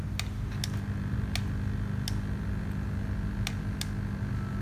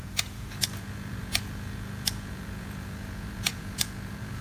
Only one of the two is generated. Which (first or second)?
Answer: second